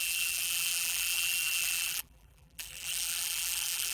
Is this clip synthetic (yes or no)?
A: yes